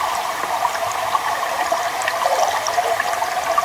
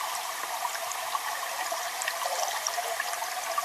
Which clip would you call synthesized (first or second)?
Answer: second